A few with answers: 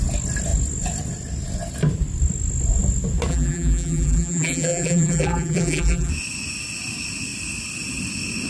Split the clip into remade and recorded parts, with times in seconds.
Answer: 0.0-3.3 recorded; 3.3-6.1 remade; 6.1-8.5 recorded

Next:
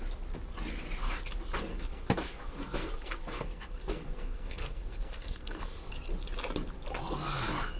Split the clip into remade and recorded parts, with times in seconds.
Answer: 0.0-1.7 recorded; 1.7-5.9 remade; 5.9-7.8 recorded

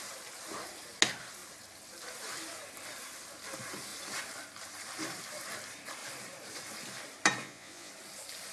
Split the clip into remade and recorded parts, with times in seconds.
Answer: 0.0-7.4 recorded; 7.4-7.9 remade; 7.9-8.5 recorded

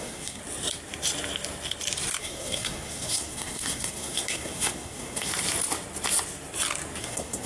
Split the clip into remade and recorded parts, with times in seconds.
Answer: 0.0-0.4 remade; 0.4-2.2 recorded; 2.2-5.3 remade; 5.3-7.0 recorded; 7.0-7.5 remade

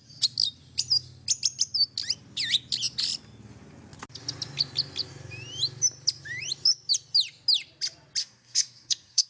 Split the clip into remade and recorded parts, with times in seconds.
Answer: 0.0-8.2 recorded; 8.2-9.3 remade

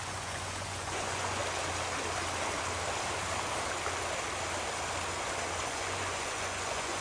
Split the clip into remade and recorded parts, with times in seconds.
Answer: 0.0-1.4 remade; 1.4-5.6 recorded; 5.6-7.0 remade

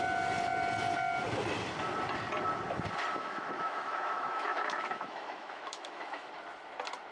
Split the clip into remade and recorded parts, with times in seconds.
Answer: 0.0-3.1 recorded; 3.1-6.3 remade; 6.3-7.1 recorded

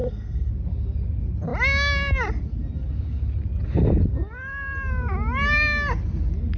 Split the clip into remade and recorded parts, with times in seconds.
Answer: 0.0-0.5 remade; 0.5-6.6 recorded